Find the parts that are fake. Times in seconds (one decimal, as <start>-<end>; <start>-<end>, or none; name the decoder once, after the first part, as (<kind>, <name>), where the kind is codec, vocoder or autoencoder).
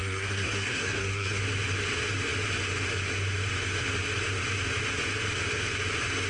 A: 0.0-1.4 (codec, SNAC)